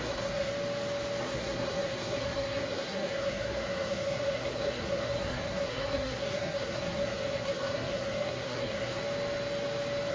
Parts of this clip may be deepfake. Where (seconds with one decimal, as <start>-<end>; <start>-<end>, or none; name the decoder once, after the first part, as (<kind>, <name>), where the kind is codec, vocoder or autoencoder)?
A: 0.0-0.5 (codec, SNAC); 1.2-9.0